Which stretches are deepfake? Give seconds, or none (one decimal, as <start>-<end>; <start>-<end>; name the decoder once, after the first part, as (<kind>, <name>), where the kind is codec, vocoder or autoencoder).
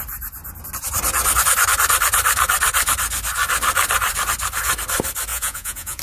5.3-6.0 (vocoder, Vocos)